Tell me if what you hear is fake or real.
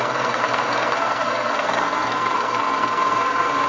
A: fake